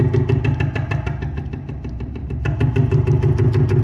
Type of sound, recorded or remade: recorded